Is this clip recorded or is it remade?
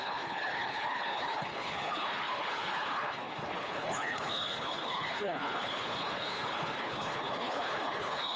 remade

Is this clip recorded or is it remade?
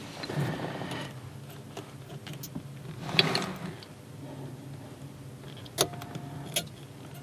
recorded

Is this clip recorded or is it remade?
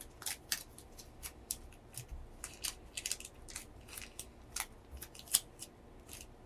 recorded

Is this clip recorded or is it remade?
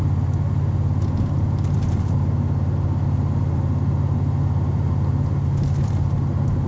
recorded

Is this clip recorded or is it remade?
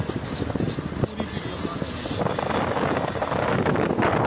recorded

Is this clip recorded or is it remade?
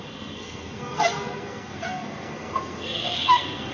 remade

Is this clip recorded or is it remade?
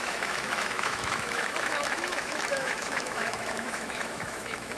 remade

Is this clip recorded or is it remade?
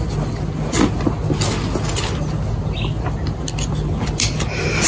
recorded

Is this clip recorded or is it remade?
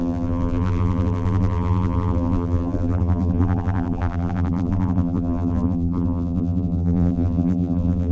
remade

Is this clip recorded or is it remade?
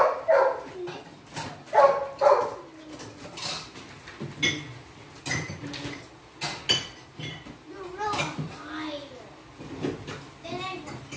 recorded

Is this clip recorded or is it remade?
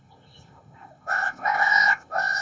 remade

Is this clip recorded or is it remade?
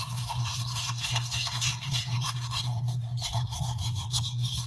remade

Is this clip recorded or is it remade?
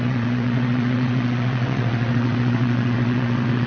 remade